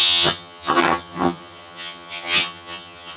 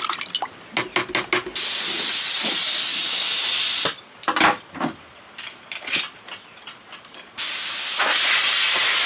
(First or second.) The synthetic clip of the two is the first